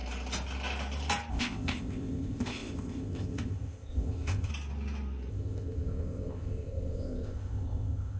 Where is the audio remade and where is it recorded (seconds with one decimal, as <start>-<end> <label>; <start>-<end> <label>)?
0.0-1.3 recorded; 1.3-4.5 remade; 4.5-5.3 recorded; 5.3-8.2 remade